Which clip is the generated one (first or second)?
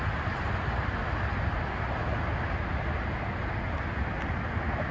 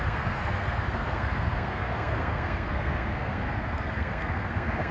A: second